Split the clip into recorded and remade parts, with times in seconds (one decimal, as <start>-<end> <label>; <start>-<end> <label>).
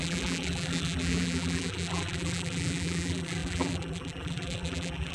0.0-5.1 remade